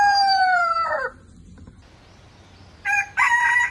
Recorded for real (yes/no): no